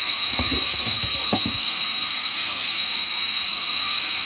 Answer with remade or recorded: remade